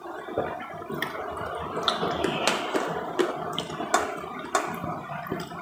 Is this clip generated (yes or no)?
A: no